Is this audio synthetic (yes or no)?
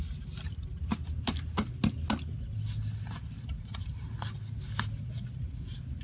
no